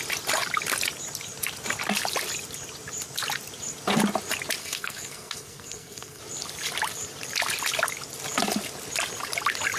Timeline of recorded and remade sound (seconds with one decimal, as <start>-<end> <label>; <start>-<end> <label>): 0.0-4.6 recorded; 4.6-6.2 remade; 6.2-9.8 recorded